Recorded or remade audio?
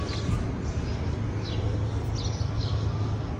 recorded